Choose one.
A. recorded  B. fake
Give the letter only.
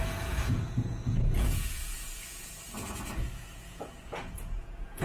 B